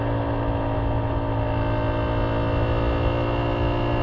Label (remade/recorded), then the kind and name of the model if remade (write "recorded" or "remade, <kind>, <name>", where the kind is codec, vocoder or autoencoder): recorded